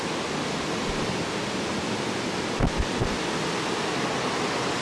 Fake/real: real